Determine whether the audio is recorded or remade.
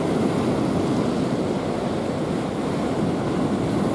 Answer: recorded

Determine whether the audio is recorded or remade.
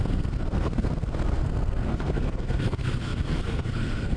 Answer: remade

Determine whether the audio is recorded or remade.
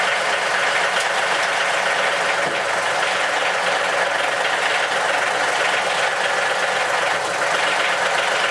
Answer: recorded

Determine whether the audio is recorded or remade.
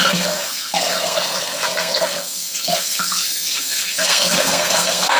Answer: remade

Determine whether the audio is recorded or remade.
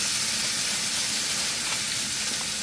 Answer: recorded